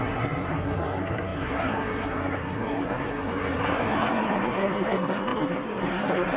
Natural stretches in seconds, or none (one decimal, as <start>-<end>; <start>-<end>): none